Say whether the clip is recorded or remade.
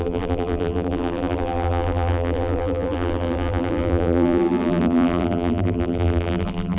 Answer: remade